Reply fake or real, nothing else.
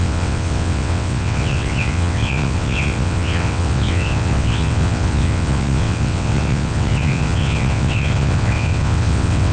fake